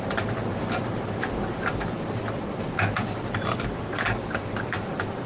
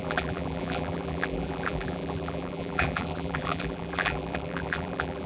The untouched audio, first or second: first